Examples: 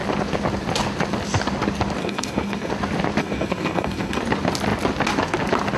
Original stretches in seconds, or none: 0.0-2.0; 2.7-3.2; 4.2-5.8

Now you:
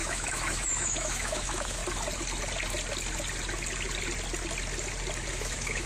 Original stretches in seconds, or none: 1.8-5.3

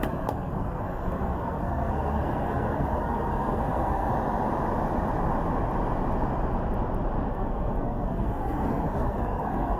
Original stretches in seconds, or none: 4.1-7.3

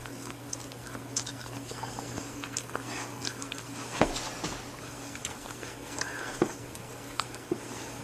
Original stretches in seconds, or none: 4.1-4.8

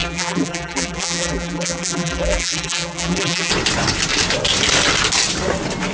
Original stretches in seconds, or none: 3.5-5.9

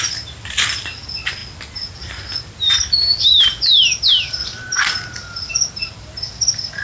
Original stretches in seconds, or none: 0.0-6.8